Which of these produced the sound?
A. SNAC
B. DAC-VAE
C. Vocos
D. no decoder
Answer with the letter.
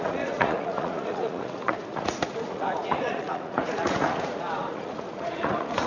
C